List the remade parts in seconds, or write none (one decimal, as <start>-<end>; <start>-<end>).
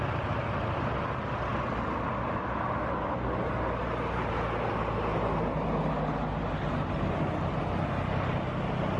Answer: none